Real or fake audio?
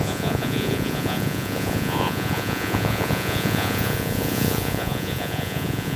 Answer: fake